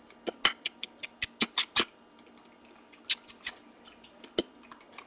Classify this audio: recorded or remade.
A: recorded